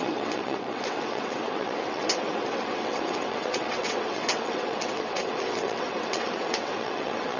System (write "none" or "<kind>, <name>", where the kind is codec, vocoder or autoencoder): vocoder, WaveNeXt